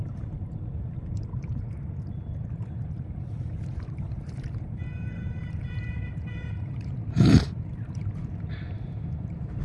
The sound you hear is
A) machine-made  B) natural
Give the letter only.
A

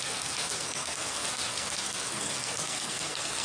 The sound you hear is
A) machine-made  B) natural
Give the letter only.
A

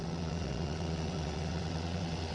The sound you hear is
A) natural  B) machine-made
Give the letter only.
B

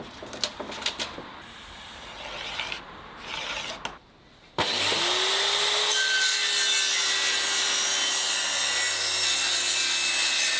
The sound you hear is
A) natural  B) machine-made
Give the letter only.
A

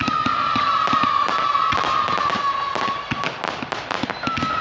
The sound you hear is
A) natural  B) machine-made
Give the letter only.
A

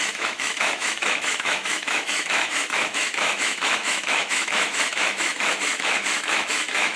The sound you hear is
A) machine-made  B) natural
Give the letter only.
A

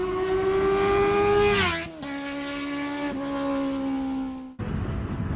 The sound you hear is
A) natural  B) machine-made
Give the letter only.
A